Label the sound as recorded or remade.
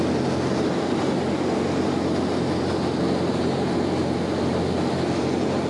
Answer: recorded